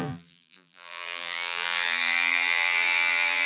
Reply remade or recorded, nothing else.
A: remade